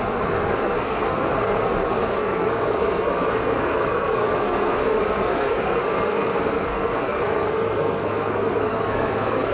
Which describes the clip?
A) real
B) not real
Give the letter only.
B